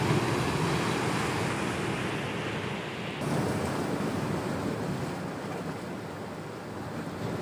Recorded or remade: recorded